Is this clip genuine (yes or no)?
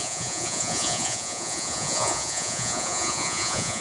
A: no